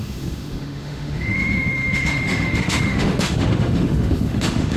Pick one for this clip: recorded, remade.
remade